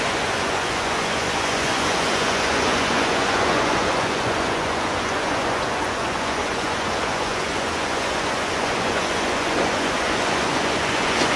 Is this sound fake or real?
fake